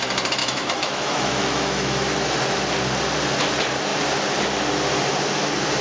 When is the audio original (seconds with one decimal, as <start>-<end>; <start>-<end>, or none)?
0.0-0.4; 2.6-5.8